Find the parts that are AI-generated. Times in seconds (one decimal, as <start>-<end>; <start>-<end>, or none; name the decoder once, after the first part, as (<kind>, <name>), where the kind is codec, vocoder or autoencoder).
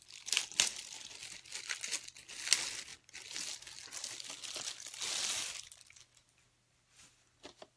none